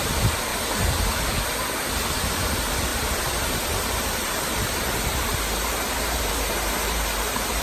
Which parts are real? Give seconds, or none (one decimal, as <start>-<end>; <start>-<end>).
0.0-2.9